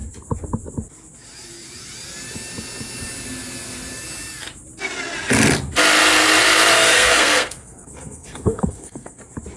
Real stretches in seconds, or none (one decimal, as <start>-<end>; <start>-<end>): 0.0-6.7; 9.2-9.6